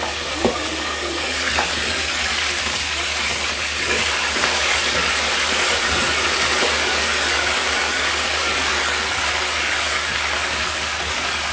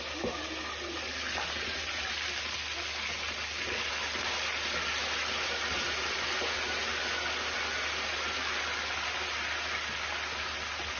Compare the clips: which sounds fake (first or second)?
first